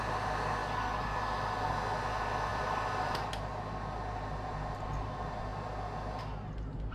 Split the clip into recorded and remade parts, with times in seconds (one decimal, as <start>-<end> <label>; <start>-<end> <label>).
0.0-2.5 recorded; 2.5-3.3 remade; 3.3-6.9 recorded

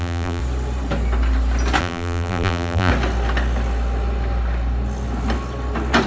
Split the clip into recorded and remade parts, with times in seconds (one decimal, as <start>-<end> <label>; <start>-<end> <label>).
0.0-0.4 remade; 0.4-1.8 recorded; 1.8-2.9 remade; 2.9-6.1 recorded

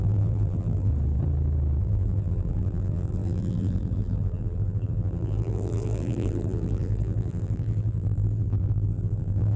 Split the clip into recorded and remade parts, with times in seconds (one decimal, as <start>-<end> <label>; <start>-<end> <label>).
0.0-0.9 remade; 0.9-1.8 recorded; 1.8-9.6 remade

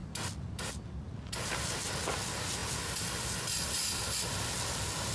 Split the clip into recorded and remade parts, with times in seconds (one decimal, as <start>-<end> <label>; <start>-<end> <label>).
0.0-5.1 recorded